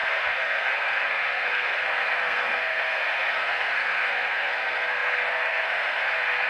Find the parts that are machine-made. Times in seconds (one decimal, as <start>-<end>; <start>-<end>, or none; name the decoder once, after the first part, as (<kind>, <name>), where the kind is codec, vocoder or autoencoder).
0.0-6.5 (codec, SNAC)